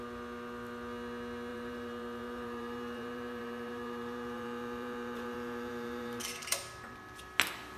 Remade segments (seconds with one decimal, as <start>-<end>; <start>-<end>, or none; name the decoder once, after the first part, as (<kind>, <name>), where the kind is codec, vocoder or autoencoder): 1.5-6.2 (vocoder, BigVGAN v2)